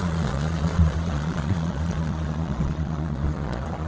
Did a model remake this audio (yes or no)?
yes